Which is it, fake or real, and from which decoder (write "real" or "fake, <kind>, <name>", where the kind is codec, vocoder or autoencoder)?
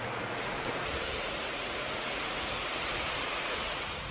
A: fake, vocoder, Vocos